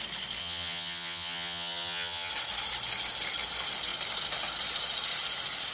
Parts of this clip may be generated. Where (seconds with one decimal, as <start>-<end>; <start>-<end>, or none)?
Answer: 0.4-2.3